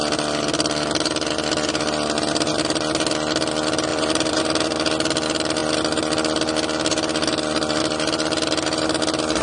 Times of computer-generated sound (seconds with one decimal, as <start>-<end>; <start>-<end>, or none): 3.9-4.4